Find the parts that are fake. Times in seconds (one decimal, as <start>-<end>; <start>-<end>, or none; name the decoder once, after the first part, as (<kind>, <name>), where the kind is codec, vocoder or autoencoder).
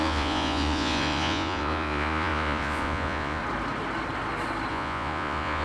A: 0.0-3.4 (vocoder, Vocos); 4.7-5.6